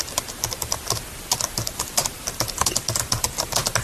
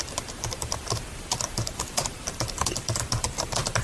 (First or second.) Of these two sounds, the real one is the first